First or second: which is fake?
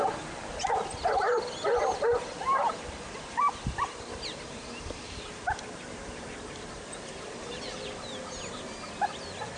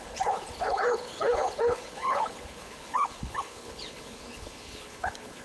second